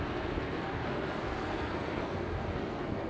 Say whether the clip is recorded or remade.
remade